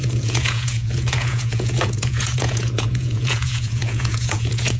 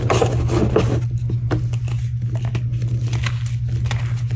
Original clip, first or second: second